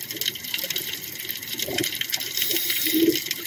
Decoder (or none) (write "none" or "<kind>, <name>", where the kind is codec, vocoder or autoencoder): none